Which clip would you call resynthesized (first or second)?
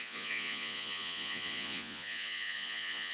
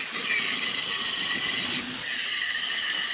first